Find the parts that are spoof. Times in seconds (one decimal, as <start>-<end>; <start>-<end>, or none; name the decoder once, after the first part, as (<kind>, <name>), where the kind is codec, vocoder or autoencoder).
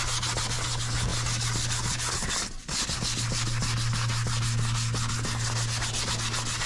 none